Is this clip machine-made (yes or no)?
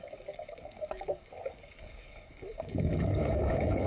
yes